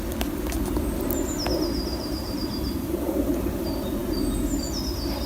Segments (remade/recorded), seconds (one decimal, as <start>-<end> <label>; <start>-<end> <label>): 0.0-1.9 recorded; 1.9-3.6 remade; 3.6-5.3 recorded